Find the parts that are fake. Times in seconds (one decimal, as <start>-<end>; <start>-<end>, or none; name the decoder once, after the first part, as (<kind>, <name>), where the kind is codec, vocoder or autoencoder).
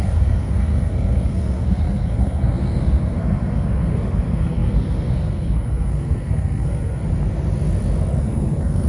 0.0-7.0 (codec, SNAC); 8.2-8.9